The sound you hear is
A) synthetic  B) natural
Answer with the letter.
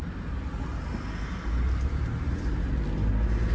B